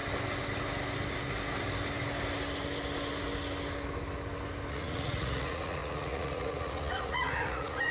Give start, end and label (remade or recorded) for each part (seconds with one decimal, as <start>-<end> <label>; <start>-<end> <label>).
0.0-4.7 recorded; 4.7-7.9 remade